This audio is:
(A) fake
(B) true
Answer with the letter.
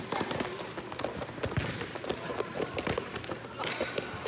B